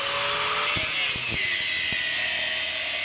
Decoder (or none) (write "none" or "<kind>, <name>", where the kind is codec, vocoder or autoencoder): none